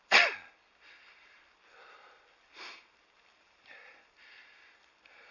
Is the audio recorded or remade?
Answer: recorded